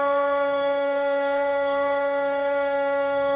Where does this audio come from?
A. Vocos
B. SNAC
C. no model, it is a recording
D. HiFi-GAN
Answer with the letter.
B